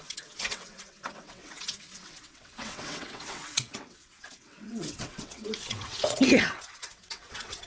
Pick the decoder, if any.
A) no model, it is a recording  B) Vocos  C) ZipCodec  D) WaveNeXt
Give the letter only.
D